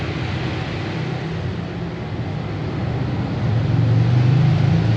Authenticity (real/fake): real